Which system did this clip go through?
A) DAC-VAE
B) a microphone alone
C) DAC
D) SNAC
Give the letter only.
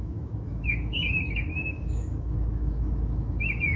A